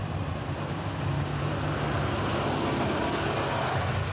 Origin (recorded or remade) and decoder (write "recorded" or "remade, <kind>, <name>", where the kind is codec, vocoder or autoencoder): recorded